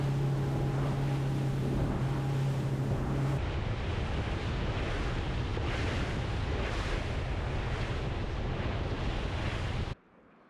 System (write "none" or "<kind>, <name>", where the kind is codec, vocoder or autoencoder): none